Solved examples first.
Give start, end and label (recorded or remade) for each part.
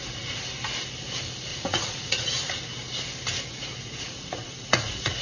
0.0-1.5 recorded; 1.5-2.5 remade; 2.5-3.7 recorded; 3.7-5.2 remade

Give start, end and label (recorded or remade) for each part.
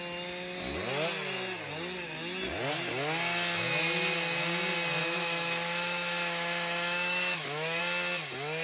0.0-5.0 recorded; 5.0-7.8 remade; 7.8-8.6 recorded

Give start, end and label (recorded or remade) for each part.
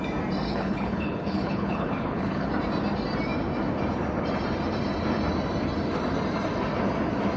0.0-0.5 recorded; 0.5-2.5 remade; 2.5-7.4 recorded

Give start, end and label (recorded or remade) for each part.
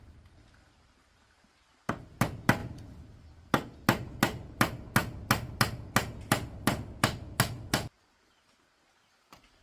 0.0-9.6 recorded